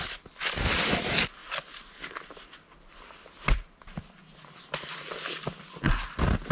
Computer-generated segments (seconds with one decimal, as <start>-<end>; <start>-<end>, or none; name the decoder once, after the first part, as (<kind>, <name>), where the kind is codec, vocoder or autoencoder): none